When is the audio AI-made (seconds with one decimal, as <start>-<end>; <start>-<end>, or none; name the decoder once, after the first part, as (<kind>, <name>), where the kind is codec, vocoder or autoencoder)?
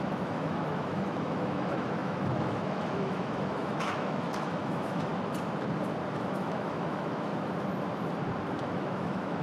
0.0-5.1 (autoencoder, DAC-VAE); 6.1-7.3; 8.6-9.4